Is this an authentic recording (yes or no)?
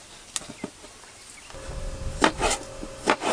yes